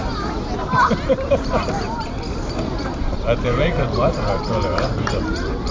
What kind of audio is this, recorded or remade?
remade